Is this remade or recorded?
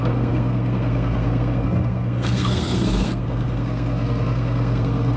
remade